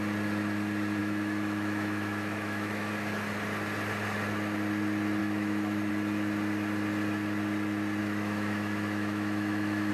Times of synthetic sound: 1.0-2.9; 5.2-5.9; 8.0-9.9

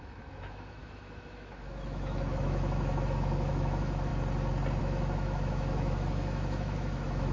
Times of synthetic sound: 0.0-4.1; 4.8-7.3

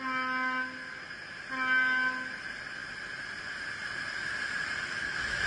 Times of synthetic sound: none

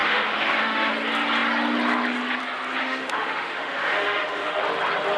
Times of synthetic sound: 0.0-0.9; 2.8-4.6

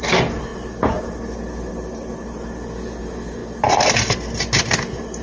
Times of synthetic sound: none

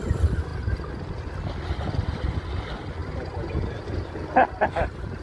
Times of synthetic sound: none

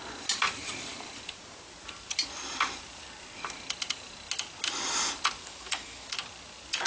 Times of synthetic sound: 5.4-6.1